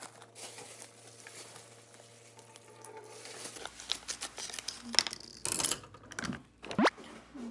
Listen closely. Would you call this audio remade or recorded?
recorded